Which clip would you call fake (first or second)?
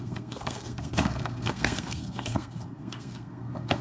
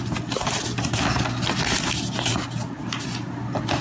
first